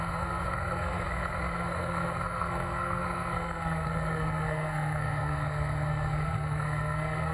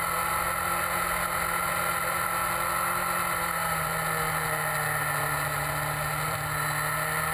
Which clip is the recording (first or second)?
second